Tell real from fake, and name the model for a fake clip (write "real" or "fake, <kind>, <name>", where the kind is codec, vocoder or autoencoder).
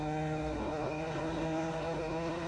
fake, codec, SNAC